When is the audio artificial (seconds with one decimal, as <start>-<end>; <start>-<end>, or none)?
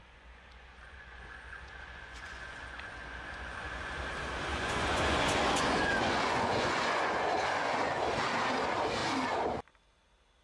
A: 0.0-4.0; 4.5-8.0